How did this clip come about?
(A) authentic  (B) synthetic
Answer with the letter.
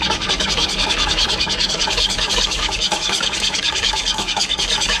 B